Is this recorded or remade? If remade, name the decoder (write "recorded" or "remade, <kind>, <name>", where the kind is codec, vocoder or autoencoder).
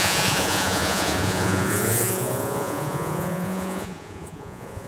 remade, vocoder, Vocos